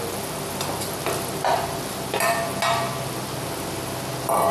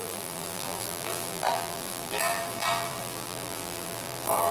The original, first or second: first